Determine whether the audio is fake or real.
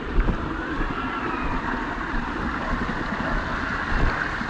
real